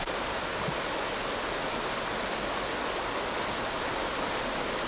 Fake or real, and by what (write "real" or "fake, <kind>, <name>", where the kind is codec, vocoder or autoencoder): real